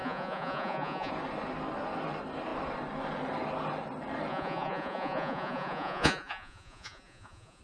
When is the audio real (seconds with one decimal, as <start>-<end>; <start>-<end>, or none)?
1.1-4.3

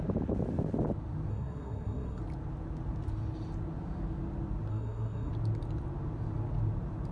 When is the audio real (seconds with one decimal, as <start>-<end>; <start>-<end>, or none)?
0.0-1.3; 2.2-4.7; 5.3-7.1

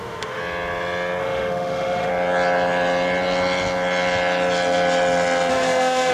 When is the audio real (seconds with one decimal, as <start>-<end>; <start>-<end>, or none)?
0.4-1.2; 2.1-5.5

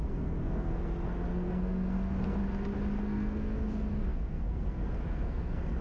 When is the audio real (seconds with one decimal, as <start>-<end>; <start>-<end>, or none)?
2.4-3.0